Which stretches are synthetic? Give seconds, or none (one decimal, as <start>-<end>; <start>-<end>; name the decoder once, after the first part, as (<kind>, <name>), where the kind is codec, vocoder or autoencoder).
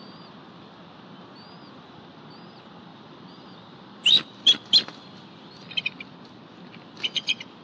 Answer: 2.9-5.9 (vocoder, BigVGAN v2)